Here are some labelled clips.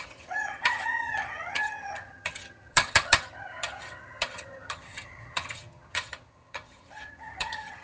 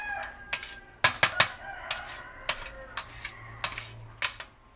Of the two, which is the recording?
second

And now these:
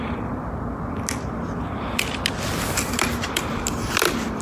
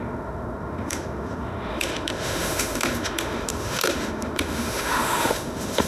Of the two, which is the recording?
first